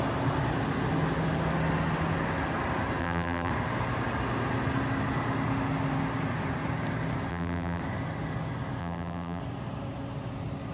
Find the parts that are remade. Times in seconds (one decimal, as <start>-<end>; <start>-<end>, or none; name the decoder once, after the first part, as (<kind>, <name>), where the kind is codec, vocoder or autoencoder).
3.0-3.5 (vocoder, BigVGAN v2); 7.3-7.8; 8.8-9.4